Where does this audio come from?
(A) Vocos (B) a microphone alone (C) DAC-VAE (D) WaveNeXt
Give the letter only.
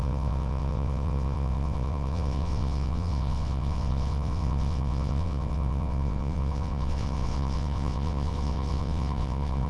D